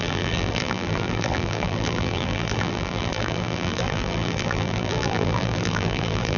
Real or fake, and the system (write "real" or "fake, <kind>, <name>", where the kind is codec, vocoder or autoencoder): fake, vocoder, BigVGAN v2